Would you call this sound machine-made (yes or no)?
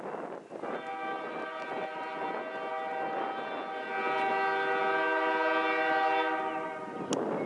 no